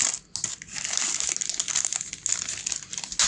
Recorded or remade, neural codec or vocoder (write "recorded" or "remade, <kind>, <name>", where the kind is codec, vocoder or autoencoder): recorded